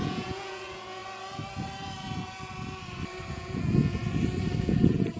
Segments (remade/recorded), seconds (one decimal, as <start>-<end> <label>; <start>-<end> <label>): 0.0-1.0 remade; 1.0-3.3 recorded; 3.3-4.0 remade; 4.0-4.6 recorded; 4.6-5.2 remade